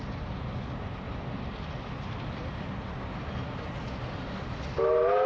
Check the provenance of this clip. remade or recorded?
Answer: recorded